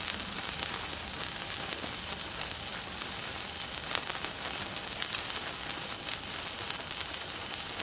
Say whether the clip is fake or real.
real